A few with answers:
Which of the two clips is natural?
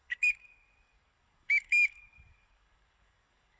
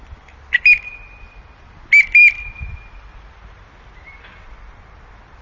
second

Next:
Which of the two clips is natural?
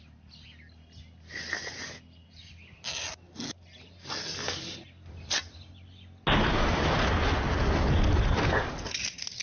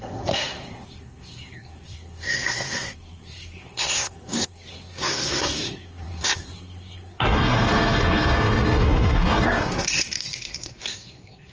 first